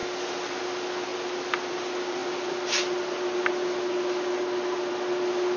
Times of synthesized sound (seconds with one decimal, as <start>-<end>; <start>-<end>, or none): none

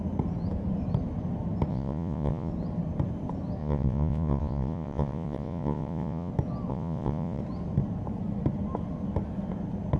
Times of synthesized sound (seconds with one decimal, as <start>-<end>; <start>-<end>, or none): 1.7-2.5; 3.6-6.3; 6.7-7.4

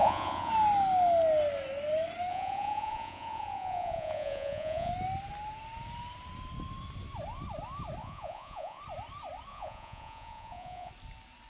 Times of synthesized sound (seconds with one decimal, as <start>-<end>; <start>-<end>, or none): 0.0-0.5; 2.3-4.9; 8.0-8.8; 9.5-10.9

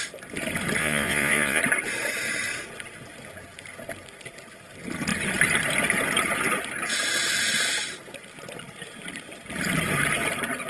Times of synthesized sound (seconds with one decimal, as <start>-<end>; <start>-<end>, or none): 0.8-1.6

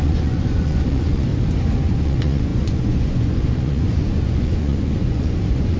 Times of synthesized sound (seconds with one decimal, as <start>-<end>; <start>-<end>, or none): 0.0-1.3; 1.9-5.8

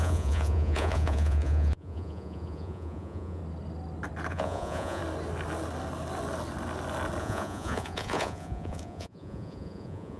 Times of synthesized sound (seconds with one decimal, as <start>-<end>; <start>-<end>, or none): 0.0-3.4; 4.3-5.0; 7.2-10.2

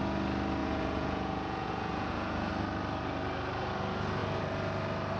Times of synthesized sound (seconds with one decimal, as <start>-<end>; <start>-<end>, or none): 0.6-2.5